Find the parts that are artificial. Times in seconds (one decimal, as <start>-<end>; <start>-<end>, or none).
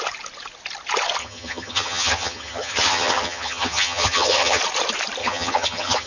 1.2-4.6; 5.2-6.1